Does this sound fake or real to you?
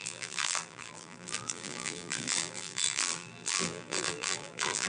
fake